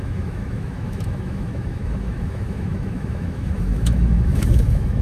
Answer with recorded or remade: remade